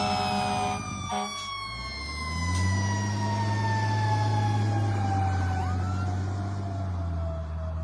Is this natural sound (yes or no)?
yes